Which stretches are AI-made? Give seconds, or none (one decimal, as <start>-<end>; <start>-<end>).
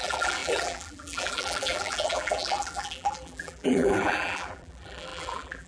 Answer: 0.0-5.7